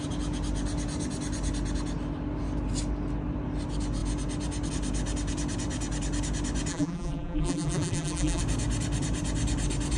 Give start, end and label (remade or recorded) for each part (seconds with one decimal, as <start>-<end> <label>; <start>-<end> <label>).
0.0-6.7 recorded; 6.7-8.4 remade; 8.4-10.0 recorded